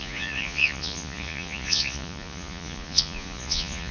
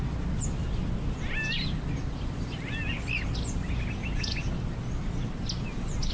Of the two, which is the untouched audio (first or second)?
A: second